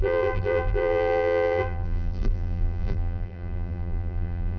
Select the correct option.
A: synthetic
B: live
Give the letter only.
A